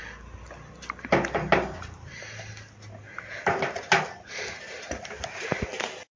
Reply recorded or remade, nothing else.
recorded